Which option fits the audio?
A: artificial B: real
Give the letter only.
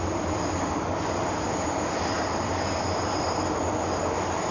B